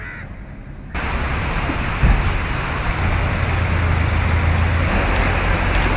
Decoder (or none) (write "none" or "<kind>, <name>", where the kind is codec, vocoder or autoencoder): none